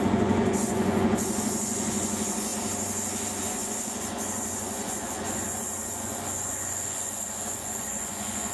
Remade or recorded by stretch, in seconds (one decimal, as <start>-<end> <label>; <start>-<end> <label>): 0.0-2.5 remade; 2.5-3.4 recorded; 3.4-8.5 remade

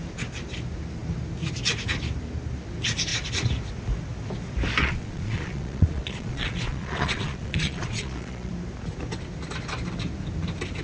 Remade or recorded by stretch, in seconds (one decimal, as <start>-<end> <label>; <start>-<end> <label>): 0.0-4.8 recorded; 4.8-8.5 remade; 8.5-10.8 recorded

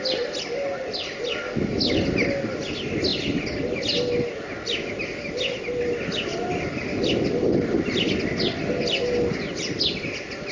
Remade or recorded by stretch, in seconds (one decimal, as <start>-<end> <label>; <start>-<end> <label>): 0.0-10.5 recorded

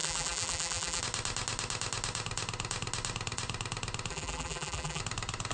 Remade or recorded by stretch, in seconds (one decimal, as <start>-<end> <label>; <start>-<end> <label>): 0.0-1.0 remade; 1.0-4.1 recorded; 4.1-5.0 remade; 5.0-5.5 recorded